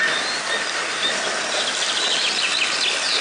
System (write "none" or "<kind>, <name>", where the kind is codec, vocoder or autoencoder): none